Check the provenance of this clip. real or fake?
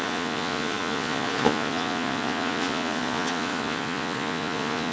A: fake